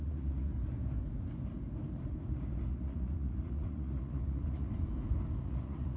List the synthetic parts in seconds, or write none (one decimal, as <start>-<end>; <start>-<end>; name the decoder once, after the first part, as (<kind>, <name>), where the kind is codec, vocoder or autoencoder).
0.0-0.5 (vocoder, Vocos); 2.7-4.7; 5.4-6.0